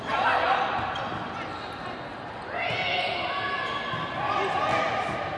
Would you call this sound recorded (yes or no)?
yes